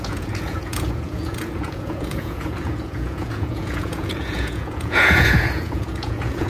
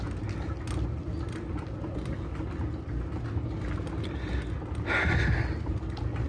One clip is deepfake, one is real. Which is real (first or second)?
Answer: second